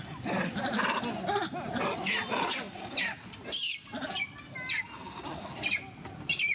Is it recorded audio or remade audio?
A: recorded